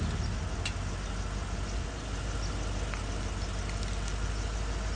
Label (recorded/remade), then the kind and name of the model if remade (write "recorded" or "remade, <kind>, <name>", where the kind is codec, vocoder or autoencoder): recorded